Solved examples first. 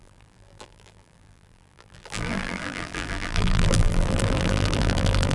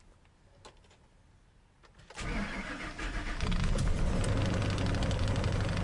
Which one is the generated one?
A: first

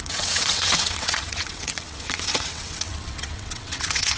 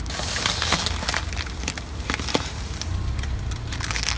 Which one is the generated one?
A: first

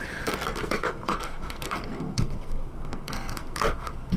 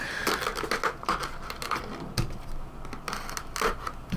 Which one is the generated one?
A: first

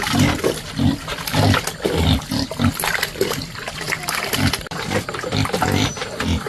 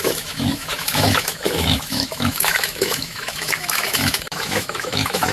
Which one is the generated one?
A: second